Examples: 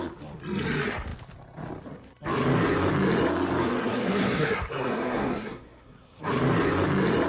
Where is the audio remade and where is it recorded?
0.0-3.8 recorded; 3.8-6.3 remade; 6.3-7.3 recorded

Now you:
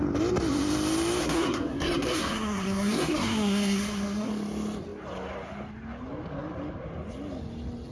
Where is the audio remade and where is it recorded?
0.0-1.2 recorded; 1.2-4.3 remade; 4.3-7.9 recorded

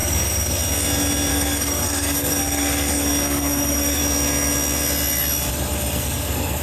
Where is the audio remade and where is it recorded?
0.0-0.6 remade; 0.6-1.3 recorded; 1.3-4.0 remade; 4.0-5.5 recorded; 5.5-6.6 remade

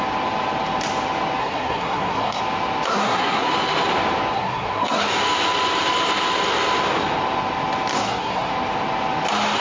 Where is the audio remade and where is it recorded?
0.0-1.4 recorded; 1.4-2.4 remade; 2.4-2.9 recorded; 2.9-3.5 remade; 3.5-4.3 recorded; 4.3-5.0 remade; 5.0-7.9 recorded; 7.9-8.5 remade; 8.5-9.6 recorded